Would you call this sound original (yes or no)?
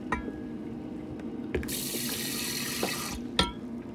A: yes